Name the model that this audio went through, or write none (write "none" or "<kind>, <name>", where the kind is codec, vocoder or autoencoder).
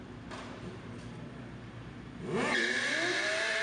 none